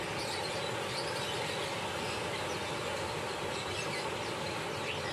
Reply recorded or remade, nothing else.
recorded